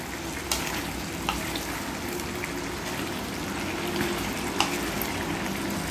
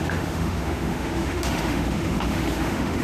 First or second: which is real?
first